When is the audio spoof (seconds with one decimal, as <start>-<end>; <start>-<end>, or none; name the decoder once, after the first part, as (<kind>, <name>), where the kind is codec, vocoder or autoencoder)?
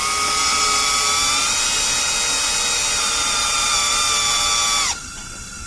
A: 0.5-1.1 (vocoder, BigVGAN v2); 2.8-4.0